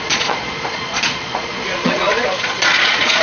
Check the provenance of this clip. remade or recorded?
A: remade